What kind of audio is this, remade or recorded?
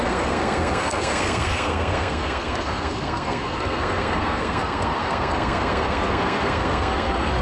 remade